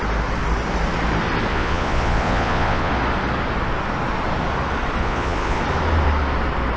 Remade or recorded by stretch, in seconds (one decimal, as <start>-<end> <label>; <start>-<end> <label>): 0.0-1.5 recorded; 1.5-2.9 remade; 2.9-5.0 recorded; 5.0-5.6 remade; 5.6-6.8 recorded